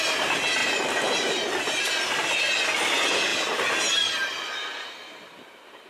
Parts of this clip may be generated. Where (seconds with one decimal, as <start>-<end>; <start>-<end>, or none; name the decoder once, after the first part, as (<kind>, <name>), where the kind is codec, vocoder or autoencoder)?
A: none